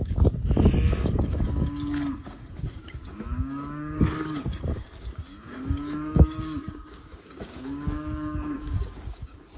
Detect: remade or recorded remade